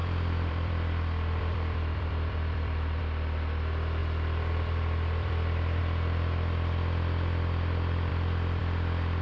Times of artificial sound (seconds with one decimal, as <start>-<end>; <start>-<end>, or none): 0.0-3.0; 4.0-5.8